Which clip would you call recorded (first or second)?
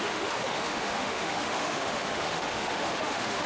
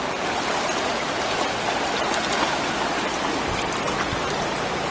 second